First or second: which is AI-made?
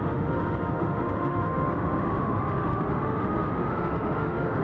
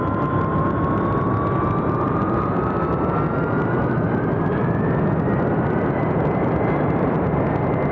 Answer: first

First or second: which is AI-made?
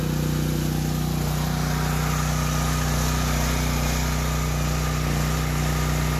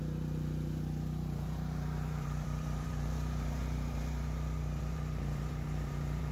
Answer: second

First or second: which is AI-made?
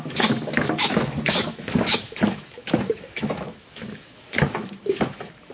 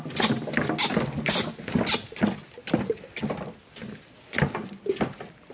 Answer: first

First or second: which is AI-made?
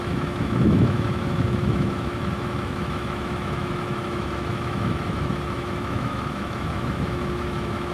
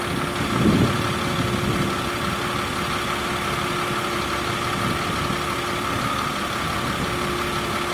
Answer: first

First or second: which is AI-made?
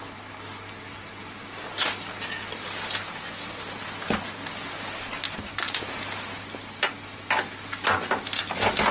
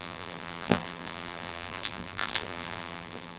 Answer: second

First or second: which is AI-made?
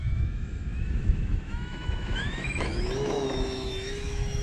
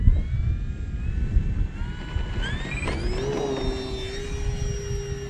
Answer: first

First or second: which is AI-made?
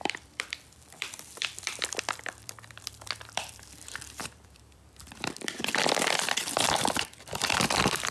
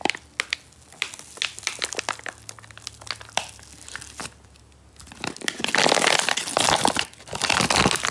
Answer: first